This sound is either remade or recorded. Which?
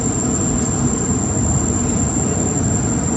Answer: recorded